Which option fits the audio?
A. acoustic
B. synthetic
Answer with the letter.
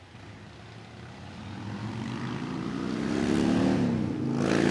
A